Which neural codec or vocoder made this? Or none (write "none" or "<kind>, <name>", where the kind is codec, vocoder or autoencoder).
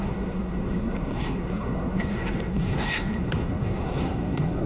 codec, SNAC